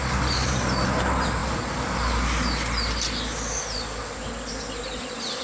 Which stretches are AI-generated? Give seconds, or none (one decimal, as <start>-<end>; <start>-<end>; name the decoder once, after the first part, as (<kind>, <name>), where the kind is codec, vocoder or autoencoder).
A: none